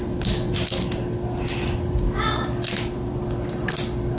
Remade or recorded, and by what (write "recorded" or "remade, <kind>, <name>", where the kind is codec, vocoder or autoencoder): recorded